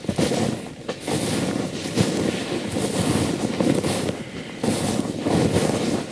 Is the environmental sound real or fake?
real